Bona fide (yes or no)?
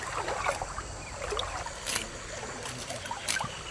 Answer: yes